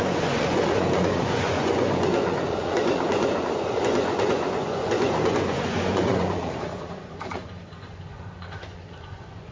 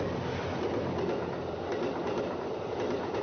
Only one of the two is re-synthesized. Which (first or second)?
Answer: first